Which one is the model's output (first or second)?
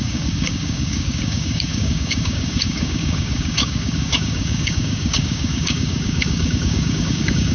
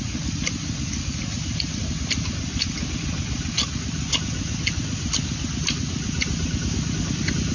first